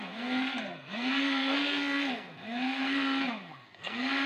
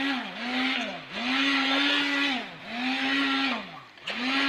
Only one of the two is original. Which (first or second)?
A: second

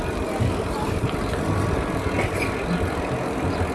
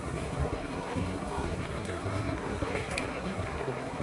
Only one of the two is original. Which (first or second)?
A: first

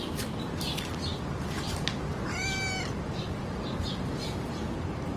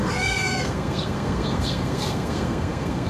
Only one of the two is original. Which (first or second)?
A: first